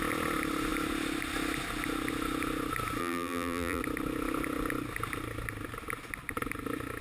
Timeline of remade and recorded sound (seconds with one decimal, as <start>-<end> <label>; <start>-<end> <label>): 0.0-3.0 recorded; 3.0-3.8 remade; 3.8-7.0 recorded